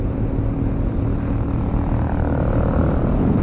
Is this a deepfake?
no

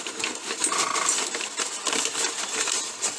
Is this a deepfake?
yes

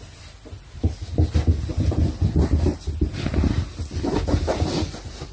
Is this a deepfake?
no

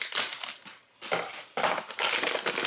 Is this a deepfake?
no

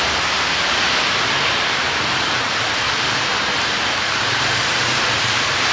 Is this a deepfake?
yes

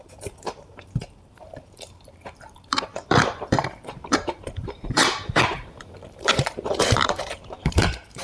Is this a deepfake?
yes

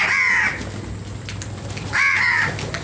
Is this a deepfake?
no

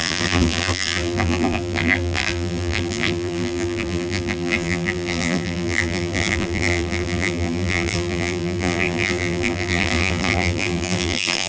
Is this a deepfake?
yes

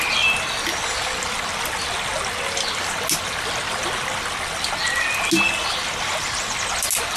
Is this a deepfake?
no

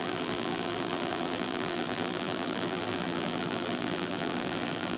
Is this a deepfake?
yes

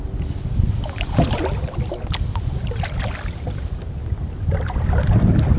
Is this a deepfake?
no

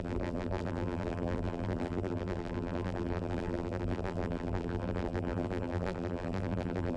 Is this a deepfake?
yes